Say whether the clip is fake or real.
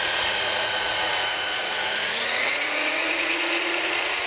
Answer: fake